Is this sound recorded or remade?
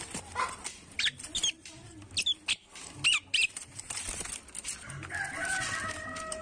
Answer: remade